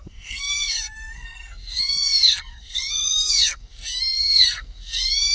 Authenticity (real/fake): fake